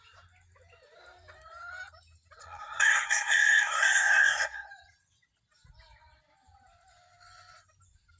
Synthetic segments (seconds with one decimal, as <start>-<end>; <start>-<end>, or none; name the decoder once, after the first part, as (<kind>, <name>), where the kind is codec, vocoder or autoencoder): 2.4-4.7 (codec, SNAC)